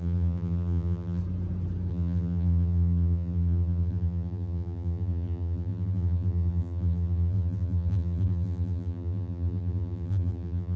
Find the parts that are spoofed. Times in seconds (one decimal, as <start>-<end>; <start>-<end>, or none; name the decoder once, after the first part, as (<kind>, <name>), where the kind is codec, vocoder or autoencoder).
0.0-1.2 (vocoder, BigVGAN v2); 1.9-10.8